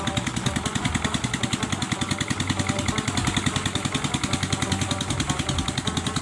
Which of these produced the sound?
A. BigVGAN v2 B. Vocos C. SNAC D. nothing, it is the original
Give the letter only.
D